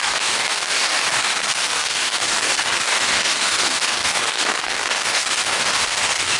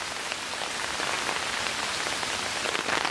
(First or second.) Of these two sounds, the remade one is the first